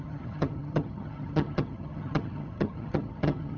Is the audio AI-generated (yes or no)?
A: yes